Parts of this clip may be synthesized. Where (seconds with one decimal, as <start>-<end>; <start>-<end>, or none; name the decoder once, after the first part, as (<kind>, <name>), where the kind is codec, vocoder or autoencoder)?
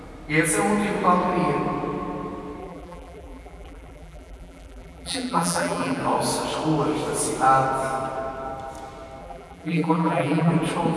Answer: 2.6-6.0 (vocoder, BigVGAN v2); 9.2-10.5